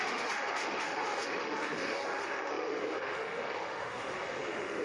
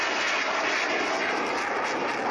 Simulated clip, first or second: first